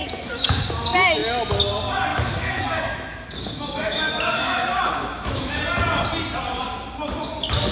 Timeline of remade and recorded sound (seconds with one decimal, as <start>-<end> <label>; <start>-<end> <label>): 0.0-0.6 remade; 0.6-2.1 recorded; 2.1-5.6 remade; 5.6-7.7 recorded